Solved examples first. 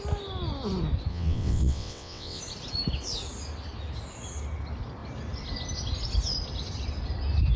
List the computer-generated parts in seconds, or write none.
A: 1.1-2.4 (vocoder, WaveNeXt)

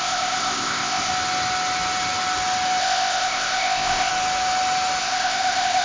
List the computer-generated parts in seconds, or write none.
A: 0.0-1.1 (codec, ZipCodec); 2.8-4.1; 5.0-5.8

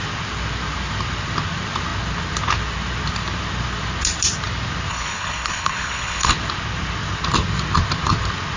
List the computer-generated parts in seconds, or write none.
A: 4.9-6.3 (codec, HILCodec)

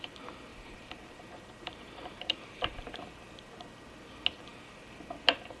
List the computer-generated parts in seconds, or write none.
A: 0.5-3.0 (vocoder, BigVGAN v2)

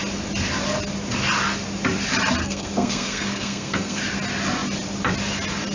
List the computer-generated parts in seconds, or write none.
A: 2.4-4.0 (codec, SNAC)

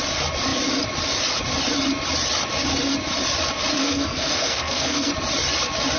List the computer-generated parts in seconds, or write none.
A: 3.8-5.1 (codec, SNAC)

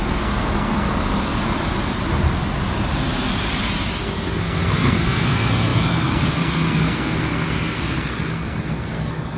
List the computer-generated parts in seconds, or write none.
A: 0.0-1.4 (codec, SNAC); 4.0-9.4